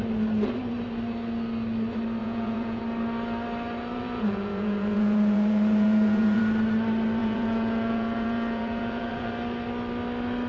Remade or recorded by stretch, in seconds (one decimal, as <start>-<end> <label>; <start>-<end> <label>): 0.0-2.2 recorded; 2.2-2.8 remade; 2.8-3.9 recorded; 3.9-6.4 remade; 6.4-7.2 recorded; 7.2-9.3 remade; 9.3-10.5 recorded